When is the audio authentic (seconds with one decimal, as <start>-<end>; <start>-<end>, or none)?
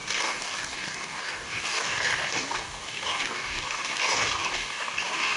none